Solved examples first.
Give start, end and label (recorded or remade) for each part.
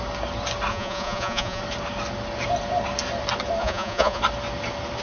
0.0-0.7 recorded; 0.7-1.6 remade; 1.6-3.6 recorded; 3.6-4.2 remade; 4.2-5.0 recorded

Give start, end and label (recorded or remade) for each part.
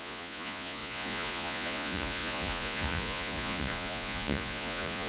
0.0-5.1 remade